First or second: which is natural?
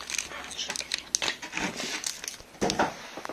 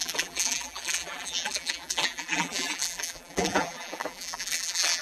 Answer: first